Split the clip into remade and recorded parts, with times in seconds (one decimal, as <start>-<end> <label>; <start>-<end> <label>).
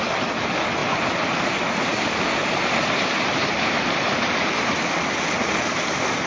0.0-0.8 recorded; 0.8-4.6 remade; 4.6-6.3 recorded